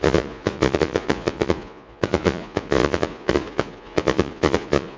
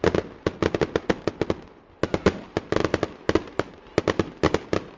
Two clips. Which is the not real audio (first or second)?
first